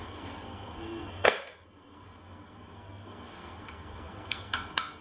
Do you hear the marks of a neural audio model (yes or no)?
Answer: yes